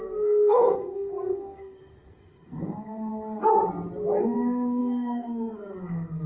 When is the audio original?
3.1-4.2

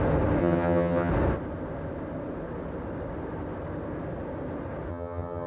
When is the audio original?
0.0-0.4; 1.1-4.9

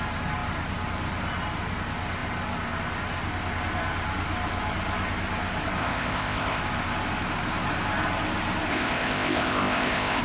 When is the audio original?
0.0-5.8; 6.6-8.7

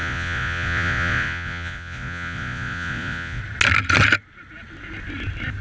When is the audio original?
3.4-5.6